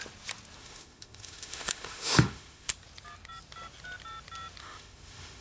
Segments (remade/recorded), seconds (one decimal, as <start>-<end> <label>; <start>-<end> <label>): 0.0-0.6 recorded; 0.6-2.7 remade; 2.7-4.6 recorded; 4.6-5.4 remade